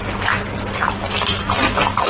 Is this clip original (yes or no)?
yes